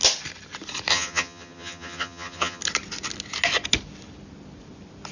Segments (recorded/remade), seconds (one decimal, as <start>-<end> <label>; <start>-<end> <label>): 0.0-0.9 recorded; 0.9-2.6 remade; 2.6-5.1 recorded